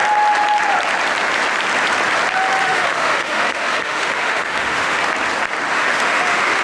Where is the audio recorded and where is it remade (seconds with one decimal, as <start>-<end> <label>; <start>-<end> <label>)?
0.0-2.6 recorded; 2.6-5.1 remade; 5.1-5.7 recorded; 5.7-6.6 remade